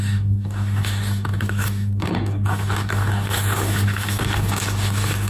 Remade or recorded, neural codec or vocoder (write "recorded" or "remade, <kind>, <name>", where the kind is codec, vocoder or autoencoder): remade, codec, DAC